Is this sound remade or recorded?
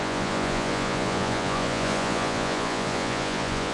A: remade